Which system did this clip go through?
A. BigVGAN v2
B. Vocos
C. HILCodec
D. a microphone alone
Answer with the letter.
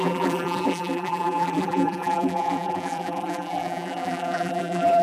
A